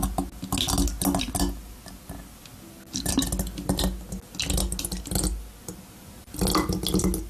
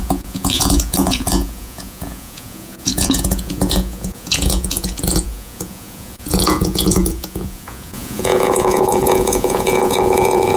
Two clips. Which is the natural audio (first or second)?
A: first